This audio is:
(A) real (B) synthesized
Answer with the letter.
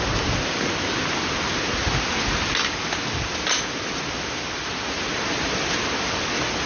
A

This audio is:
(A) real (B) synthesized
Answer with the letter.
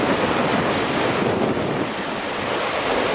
A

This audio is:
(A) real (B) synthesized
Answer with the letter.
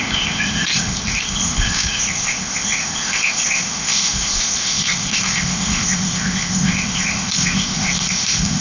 B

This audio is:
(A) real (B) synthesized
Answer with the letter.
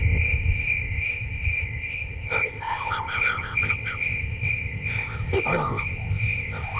B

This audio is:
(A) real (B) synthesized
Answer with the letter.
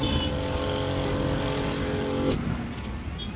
A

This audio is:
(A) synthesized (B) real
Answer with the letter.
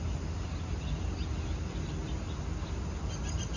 B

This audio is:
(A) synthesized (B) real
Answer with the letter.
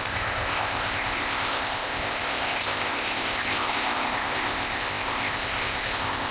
A